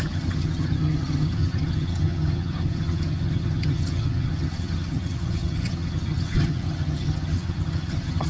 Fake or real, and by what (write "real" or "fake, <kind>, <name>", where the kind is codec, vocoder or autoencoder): fake, vocoder, HiFi-GAN